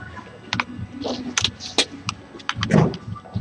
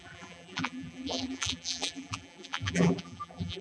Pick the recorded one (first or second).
first